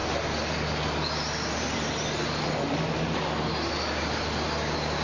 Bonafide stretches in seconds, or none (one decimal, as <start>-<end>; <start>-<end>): 0.0-5.0

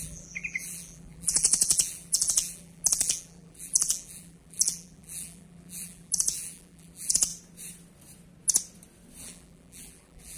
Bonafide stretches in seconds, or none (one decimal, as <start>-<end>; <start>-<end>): 7.3-9.2

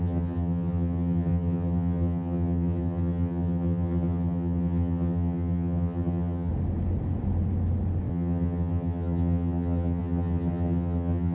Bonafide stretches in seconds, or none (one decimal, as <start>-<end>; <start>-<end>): 6.5-8.1

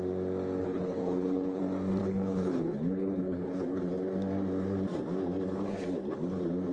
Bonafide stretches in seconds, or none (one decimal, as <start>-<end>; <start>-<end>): 0.0-0.6; 1.6-2.0; 3.8-6.7

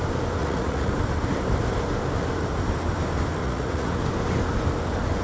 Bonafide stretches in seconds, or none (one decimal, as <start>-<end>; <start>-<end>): 0.0-0.4; 0.9-3.4; 4.0-5.2

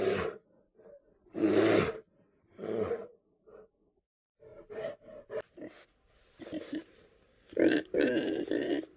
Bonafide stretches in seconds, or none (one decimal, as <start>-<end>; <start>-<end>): 0.0-9.0